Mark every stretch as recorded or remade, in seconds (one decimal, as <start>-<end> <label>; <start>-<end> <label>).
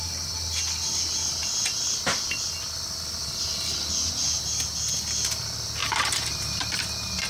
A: 0.0-1.4 recorded; 1.4-2.5 remade; 2.5-3.2 recorded; 3.2-4.1 remade; 4.1-5.8 recorded; 5.8-6.6 remade; 6.6-7.3 recorded